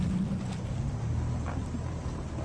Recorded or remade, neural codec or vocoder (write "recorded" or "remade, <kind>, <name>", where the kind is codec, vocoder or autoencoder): recorded